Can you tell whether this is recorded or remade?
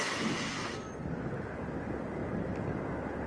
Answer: recorded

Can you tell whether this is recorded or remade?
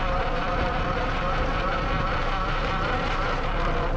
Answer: remade